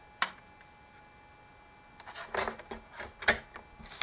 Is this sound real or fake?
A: real